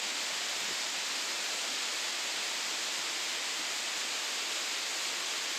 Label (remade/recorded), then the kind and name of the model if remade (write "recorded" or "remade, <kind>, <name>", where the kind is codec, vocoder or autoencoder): recorded